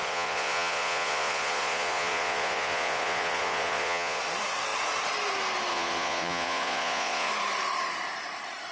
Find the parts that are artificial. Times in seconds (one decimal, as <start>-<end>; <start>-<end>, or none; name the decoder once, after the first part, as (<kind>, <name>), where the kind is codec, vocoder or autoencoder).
0.0-4.2 (vocoder, Vocos); 5.7-7.3